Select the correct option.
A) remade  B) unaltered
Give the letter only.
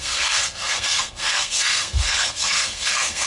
A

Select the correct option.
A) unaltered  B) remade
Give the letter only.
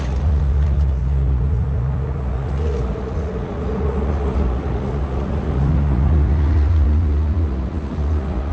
B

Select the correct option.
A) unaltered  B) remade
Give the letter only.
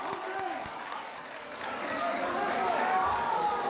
B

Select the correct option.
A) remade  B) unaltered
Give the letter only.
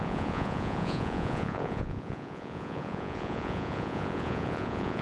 A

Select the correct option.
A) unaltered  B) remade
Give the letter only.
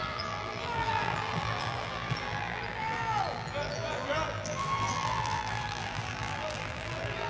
B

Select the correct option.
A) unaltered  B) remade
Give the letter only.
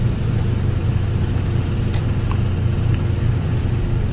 A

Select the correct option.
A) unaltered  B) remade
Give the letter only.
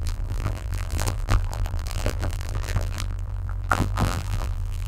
B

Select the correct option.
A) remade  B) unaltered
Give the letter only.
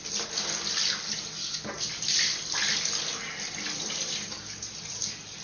B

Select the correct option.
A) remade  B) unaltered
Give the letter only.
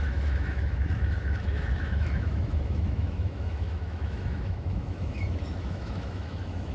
A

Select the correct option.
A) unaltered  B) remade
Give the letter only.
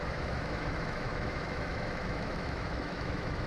B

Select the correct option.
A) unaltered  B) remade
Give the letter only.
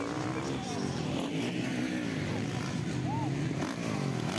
A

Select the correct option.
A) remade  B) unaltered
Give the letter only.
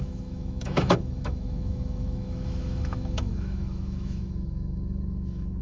A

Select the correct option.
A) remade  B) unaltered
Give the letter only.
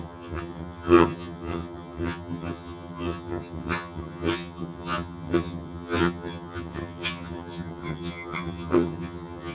A